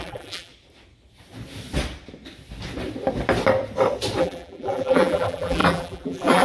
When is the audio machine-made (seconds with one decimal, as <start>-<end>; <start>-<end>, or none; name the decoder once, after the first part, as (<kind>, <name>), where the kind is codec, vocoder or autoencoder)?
0.0-0.5 (vocoder, BigVGAN v2); 4.2-6.4